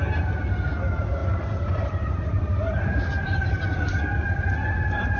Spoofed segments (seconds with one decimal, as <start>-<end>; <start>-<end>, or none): 1.2-4.3